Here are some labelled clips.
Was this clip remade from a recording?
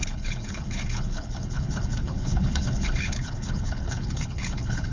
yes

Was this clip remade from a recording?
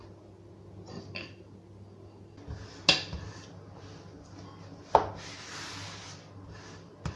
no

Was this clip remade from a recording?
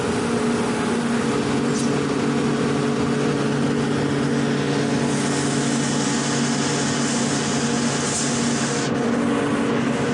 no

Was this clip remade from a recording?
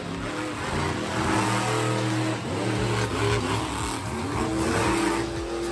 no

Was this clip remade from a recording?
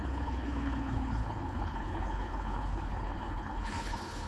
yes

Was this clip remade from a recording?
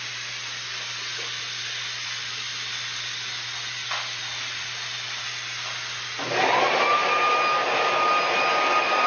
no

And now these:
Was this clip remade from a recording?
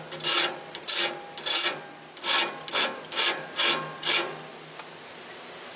no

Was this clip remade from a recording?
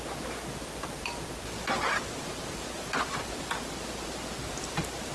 no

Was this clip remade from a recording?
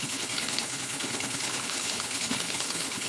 yes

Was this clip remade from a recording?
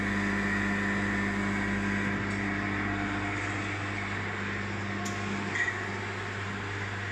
no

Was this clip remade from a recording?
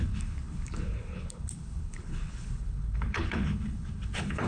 yes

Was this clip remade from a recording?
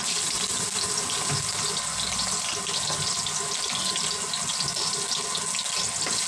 no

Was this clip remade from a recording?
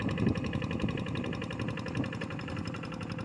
no